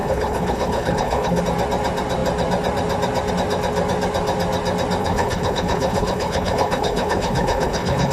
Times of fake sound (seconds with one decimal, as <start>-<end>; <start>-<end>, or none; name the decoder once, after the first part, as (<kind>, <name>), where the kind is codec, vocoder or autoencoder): 0.0-1.4 (codec, HILCodec); 5.0-8.1